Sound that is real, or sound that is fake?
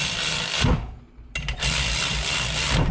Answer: real